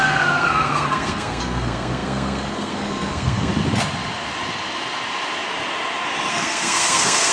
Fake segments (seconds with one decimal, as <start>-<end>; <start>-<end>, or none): 0.0-3.5; 6.3-7.3